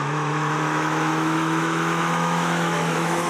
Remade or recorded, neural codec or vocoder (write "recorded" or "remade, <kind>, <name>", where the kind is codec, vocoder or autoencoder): remade, autoencoder, DAC-VAE